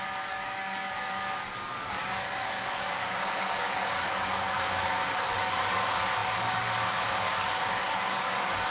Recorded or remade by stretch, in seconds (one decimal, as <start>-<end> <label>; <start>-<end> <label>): 0.0-8.7 remade